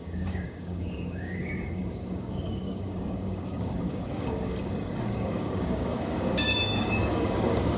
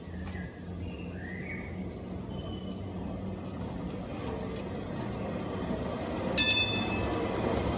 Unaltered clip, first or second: second